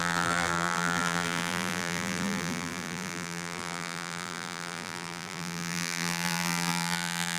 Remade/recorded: remade